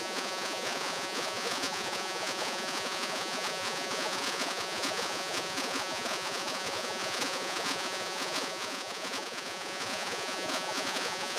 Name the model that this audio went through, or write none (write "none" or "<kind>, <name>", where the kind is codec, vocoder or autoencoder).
vocoder, Vocos